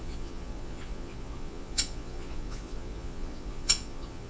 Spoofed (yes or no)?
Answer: yes